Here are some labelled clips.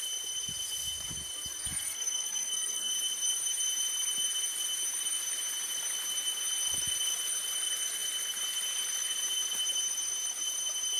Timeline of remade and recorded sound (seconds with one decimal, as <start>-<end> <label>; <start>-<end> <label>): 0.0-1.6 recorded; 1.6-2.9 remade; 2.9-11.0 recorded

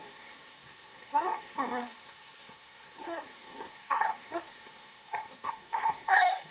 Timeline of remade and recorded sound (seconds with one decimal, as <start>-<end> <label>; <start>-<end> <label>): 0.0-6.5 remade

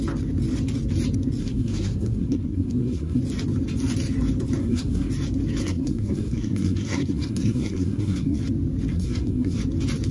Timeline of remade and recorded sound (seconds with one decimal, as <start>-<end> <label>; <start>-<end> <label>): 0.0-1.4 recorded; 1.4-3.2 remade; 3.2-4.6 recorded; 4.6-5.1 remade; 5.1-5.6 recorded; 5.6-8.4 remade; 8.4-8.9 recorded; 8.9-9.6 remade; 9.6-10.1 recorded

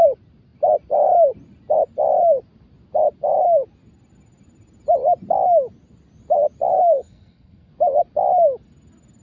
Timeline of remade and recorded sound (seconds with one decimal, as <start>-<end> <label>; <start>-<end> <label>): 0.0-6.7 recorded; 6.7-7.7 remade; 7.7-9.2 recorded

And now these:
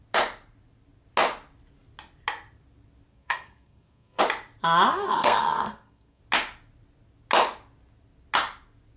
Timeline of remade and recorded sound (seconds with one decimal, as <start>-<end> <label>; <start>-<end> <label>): 0.0-3.1 recorded; 3.1-4.2 remade; 4.2-4.9 recorded; 4.9-6.2 remade; 6.2-9.0 recorded

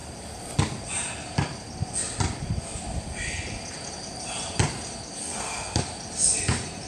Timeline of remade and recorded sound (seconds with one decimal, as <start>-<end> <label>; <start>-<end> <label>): 0.0-5.2 recorded; 5.2-5.8 remade; 5.8-6.9 recorded

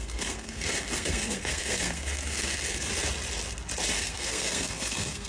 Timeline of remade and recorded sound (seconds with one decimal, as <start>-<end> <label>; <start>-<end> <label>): 0.0-2.9 remade; 2.9-3.9 recorded; 3.9-5.3 remade

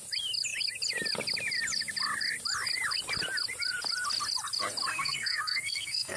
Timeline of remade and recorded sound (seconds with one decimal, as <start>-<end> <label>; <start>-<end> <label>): 0.0-4.9 recorded; 4.9-6.2 remade